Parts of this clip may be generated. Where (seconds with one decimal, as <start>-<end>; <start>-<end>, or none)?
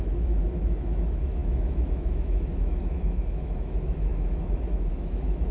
0.0-5.5